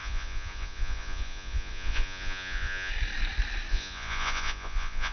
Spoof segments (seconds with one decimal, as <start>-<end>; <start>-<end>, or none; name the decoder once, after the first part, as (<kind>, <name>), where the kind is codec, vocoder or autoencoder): 0.0-2.9 (vocoder, Vocos); 3.7-5.1